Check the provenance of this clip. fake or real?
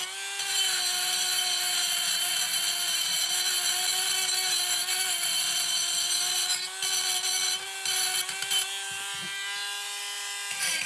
real